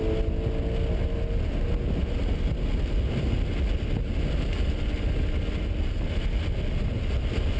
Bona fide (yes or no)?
yes